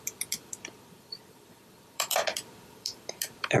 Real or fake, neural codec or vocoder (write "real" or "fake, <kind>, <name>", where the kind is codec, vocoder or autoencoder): fake, vocoder, BigVGAN v2